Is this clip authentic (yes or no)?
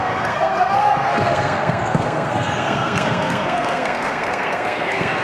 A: no